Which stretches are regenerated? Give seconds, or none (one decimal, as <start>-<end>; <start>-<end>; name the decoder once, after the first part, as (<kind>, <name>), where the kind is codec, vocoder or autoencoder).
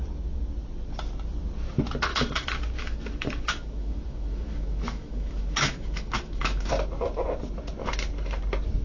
2.1-6.7 (autoencoder, DAC-VAE)